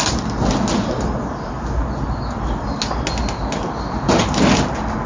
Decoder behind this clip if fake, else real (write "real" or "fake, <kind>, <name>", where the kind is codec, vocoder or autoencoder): real